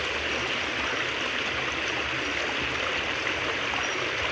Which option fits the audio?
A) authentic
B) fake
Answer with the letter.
A